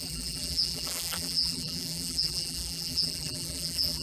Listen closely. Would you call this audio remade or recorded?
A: remade